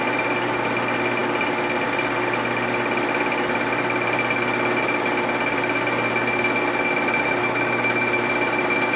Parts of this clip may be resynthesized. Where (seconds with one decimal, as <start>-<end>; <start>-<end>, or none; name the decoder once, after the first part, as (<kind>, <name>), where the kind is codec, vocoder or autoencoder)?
7.4-8.2 (autoencoder, DAC-VAE)